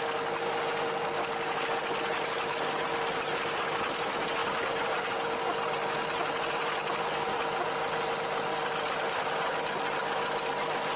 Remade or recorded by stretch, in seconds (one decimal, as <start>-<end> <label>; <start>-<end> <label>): 0.0-11.0 recorded